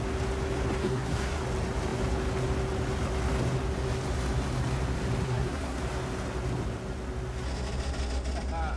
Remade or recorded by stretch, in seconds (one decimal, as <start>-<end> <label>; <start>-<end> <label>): 0.0-0.8 recorded; 0.8-1.4 remade; 1.4-5.2 recorded; 5.2-5.8 remade; 5.8-8.8 recorded